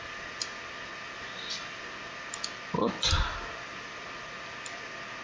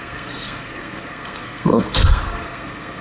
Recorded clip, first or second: first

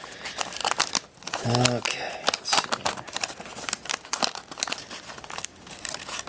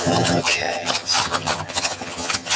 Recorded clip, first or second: first